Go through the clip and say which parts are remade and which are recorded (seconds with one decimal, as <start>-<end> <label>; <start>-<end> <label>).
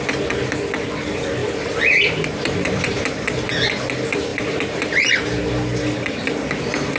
0.0-1.4 recorded; 1.4-3.5 remade; 3.5-4.3 recorded; 4.3-5.1 remade; 5.1-7.0 recorded